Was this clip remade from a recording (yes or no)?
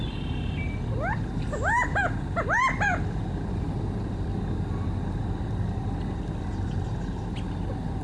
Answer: no